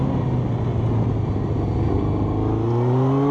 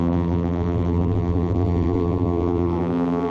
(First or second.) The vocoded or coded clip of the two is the second